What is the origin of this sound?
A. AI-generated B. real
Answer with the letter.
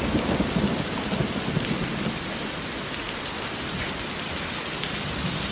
B